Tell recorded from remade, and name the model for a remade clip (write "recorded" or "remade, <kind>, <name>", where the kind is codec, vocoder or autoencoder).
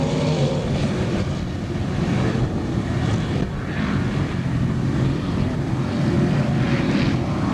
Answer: remade, vocoder, BigVGAN v2